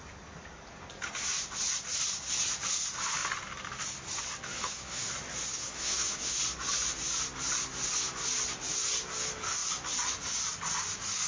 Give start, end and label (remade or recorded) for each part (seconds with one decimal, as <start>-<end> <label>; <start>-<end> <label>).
0.0-4.5 recorded; 4.5-5.1 remade; 5.1-5.6 recorded; 5.6-6.4 remade; 6.4-11.3 recorded